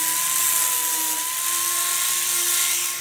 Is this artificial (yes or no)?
no